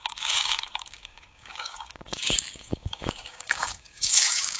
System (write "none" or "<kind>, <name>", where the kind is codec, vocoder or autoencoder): codec, DAC